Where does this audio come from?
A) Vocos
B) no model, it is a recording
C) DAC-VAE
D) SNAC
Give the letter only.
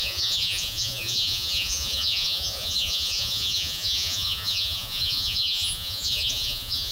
A